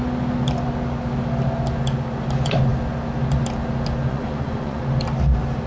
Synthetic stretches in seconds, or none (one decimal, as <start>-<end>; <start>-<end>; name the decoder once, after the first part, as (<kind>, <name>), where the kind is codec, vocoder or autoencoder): 4.1-4.8 (vocoder, Vocos)